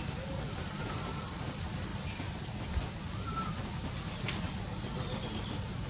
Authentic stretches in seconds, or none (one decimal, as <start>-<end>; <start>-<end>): 0.0-5.9